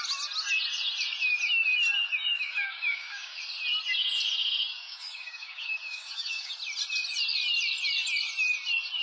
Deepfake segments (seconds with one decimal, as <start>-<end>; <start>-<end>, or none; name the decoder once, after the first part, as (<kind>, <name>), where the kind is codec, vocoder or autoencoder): 2.3-3.4 (codec, DAC); 4.7-6.5